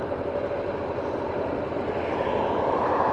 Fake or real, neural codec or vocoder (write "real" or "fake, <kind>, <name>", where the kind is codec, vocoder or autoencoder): real